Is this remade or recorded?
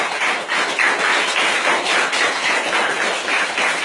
recorded